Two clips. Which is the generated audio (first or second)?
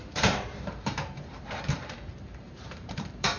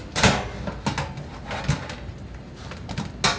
first